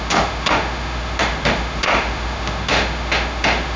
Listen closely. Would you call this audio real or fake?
fake